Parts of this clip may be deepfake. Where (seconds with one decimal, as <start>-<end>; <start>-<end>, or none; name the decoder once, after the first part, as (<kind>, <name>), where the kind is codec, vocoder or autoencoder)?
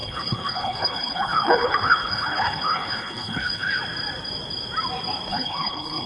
0.0-3.7 (codec, HILCodec); 5.3-6.1